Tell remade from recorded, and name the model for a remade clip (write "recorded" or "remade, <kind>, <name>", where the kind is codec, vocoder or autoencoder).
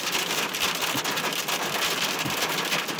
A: recorded